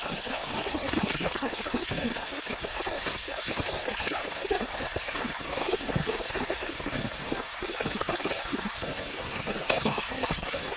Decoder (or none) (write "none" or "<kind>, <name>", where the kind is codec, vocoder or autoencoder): codec, SNAC